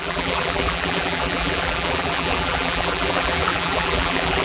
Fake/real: fake